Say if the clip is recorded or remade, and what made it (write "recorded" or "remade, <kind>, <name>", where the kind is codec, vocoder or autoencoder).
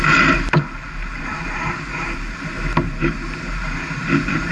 remade, vocoder, BigVGAN v2